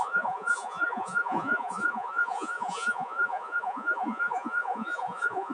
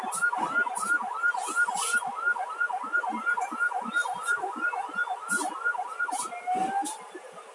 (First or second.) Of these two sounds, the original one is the second